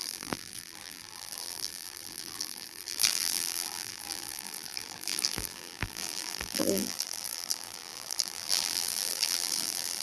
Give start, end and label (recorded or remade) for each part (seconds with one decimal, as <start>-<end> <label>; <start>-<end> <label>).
0.0-10.0 remade